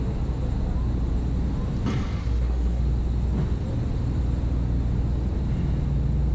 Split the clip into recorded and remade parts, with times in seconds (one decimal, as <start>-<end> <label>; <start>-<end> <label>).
0.0-2.2 recorded; 2.2-2.8 remade; 2.8-6.3 recorded